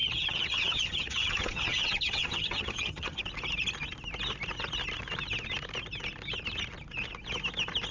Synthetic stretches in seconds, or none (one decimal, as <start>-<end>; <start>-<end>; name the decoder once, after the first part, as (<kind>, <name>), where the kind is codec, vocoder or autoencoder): 0.0-3.2 (vocoder, HiFi-GAN)